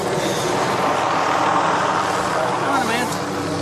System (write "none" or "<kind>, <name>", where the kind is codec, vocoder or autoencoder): none